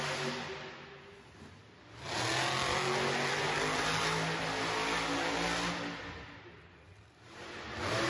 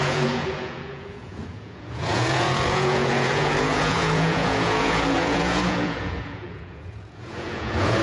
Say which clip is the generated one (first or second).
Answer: second